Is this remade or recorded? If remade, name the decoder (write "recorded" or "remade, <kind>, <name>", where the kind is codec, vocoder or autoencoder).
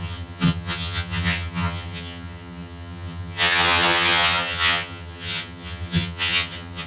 remade, vocoder, HiFi-GAN